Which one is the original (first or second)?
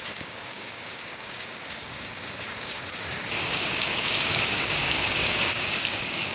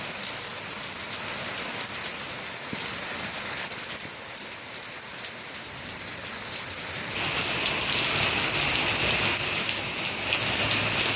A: second